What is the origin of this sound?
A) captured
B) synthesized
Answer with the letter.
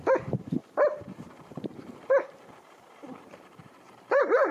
B